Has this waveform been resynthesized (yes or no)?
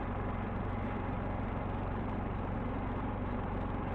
yes